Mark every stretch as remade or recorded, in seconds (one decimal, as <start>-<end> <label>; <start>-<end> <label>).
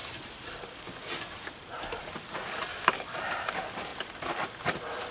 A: 0.0-2.7 recorded; 2.7-3.5 remade; 3.5-5.1 recorded